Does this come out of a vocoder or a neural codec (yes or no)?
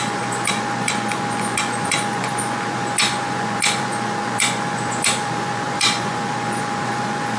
yes